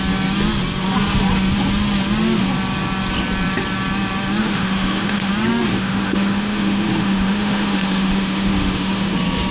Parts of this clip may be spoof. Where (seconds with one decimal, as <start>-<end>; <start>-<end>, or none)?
4.4-5.3; 5.7-9.1